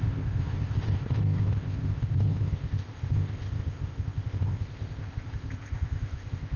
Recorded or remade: remade